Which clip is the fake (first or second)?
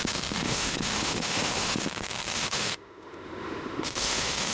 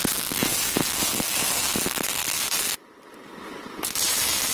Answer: first